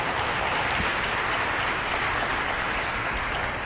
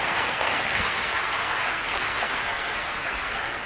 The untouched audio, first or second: first